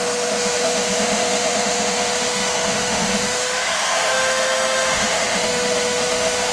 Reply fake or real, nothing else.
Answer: fake